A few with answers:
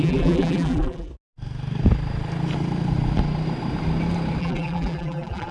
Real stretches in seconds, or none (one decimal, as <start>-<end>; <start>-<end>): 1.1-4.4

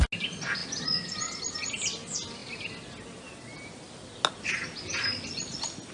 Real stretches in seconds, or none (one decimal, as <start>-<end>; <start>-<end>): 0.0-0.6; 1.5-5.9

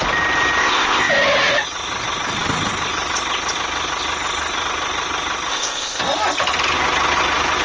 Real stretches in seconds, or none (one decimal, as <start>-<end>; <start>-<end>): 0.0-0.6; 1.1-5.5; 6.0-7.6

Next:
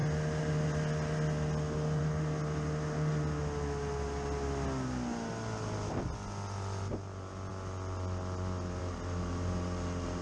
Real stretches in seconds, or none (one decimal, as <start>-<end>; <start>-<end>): 0.0-10.2

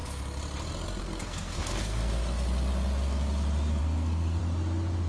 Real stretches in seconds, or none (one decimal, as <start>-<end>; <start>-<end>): 0.0-1.0; 2.2-3.8; 4.4-5.1

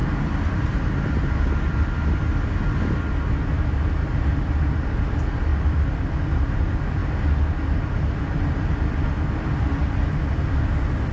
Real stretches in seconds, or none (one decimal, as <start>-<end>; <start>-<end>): 0.0-11.1